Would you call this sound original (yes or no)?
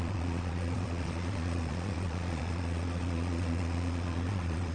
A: no